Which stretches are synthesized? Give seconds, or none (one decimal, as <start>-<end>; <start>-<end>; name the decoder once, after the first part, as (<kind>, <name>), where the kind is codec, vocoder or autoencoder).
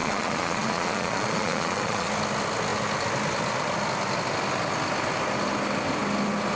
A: 0.0-2.1 (vocoder, Vocos)